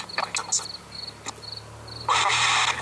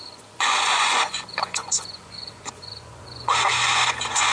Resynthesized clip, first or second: second